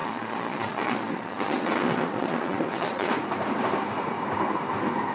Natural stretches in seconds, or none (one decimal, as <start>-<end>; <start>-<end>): 3.1-5.1